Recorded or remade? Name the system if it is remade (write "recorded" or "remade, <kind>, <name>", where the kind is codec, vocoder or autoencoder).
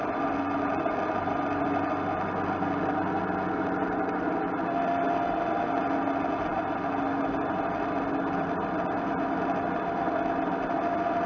recorded